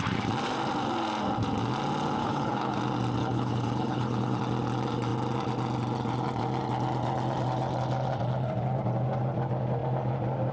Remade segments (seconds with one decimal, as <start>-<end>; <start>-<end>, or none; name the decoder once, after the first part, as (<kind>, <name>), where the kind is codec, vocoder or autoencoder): 2.2-2.8 (codec, HILCodec); 3.2-4.4